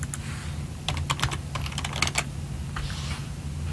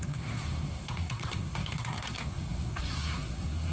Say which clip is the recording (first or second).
first